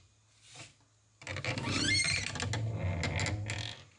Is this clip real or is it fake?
real